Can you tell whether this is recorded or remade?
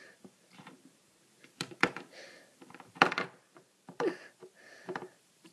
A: remade